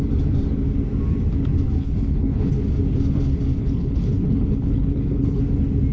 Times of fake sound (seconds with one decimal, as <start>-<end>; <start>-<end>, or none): 1.8-2.5; 3.6-5.4